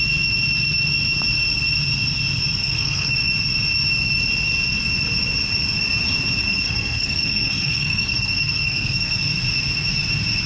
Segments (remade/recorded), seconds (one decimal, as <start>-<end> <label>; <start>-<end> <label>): 0.0-2.6 recorded; 2.6-3.3 remade; 3.3-6.4 recorded; 6.4-9.2 remade; 9.2-10.5 recorded